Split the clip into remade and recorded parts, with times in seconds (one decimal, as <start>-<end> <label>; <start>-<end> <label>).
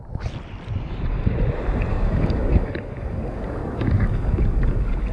0.0-1.9 recorded; 1.9-5.1 remade